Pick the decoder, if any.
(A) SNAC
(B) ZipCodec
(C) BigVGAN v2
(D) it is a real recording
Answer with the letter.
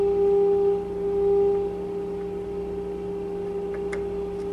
D